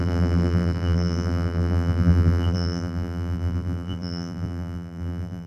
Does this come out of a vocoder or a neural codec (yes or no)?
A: yes